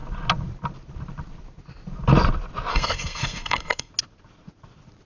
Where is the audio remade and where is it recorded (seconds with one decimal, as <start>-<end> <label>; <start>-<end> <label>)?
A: 0.0-2.7 recorded; 2.7-3.9 remade; 3.9-5.1 recorded